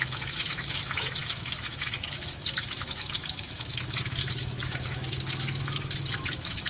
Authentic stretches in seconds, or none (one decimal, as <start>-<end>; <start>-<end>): none